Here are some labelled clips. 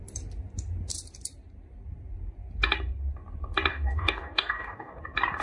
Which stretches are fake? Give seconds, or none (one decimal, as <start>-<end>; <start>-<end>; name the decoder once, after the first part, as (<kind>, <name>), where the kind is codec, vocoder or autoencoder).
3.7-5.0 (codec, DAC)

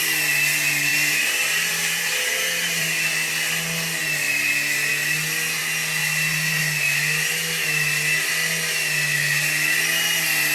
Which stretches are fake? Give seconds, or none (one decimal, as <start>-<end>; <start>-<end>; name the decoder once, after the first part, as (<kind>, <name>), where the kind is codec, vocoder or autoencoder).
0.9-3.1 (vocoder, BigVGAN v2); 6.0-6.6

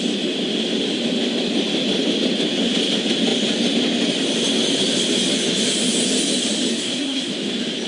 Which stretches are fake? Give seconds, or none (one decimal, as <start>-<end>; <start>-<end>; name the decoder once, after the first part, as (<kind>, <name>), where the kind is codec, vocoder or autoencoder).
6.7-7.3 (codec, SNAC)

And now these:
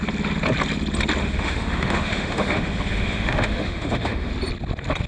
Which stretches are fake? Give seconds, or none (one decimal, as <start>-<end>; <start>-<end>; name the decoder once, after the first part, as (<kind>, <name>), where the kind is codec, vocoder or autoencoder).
1.2-4.3 (autoencoder, DAC-VAE)

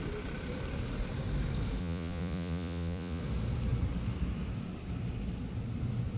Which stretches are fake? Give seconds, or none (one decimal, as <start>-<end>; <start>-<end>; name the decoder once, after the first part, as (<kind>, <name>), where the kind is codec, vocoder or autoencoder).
1.8-3.2 (vocoder, Vocos)

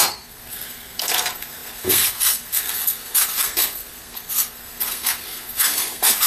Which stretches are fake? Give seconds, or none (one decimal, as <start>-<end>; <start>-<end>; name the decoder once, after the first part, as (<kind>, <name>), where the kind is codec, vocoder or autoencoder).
0.0-6.3 (codec, SNAC)

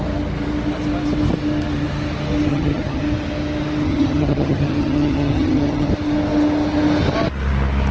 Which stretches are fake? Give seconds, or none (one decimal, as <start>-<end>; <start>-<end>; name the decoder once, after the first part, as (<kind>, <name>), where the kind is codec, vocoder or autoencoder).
2.5-3.0 (vocoder, HiFi-GAN); 3.8-5.9